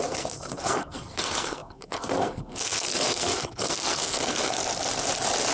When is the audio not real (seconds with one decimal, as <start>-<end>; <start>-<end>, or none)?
0.0-4.6